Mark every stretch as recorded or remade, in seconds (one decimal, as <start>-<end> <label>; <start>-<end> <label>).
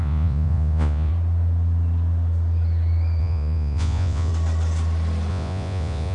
0.0-1.1 remade; 1.1-3.2 recorded; 3.2-4.3 remade; 4.3-5.3 recorded; 5.3-6.1 remade